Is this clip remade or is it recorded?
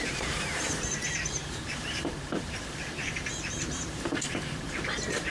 remade